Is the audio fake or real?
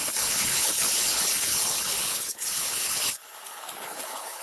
fake